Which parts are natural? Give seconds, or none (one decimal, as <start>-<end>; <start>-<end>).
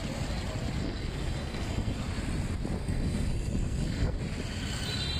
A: 0.0-0.8; 2.0-2.8; 4.2-5.2